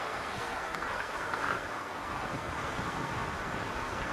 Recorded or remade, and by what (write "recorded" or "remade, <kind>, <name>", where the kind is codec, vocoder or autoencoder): remade, codec, SNAC